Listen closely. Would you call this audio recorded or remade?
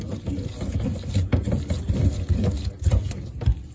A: recorded